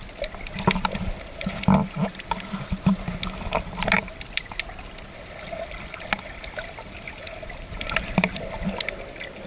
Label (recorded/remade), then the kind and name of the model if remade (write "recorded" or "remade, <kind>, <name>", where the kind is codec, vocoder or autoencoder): recorded